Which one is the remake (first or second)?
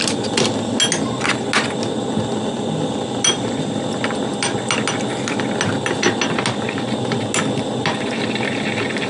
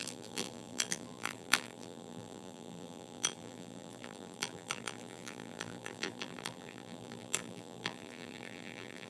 second